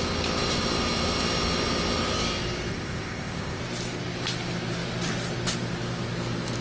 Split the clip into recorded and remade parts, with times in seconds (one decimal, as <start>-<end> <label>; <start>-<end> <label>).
0.0-2.7 recorded; 2.7-3.6 remade; 3.6-6.6 recorded